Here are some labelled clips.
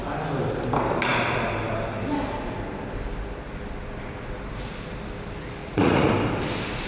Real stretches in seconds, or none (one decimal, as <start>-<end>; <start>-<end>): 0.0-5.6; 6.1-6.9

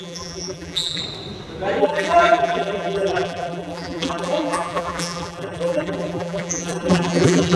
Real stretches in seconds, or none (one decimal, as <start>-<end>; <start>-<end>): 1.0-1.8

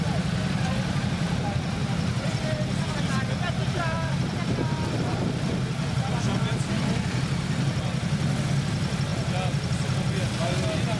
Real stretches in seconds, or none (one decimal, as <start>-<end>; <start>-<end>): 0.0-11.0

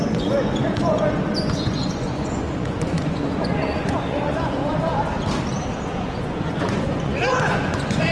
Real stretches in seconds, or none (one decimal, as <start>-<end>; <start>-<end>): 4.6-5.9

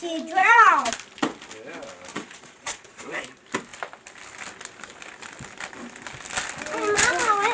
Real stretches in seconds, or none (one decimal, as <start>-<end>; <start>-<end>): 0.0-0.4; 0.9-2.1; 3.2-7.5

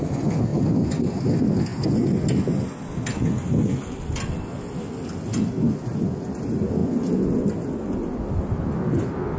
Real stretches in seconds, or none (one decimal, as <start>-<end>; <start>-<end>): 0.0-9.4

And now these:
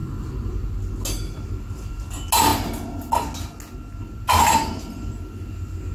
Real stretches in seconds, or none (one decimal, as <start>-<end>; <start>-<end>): 0.0-5.9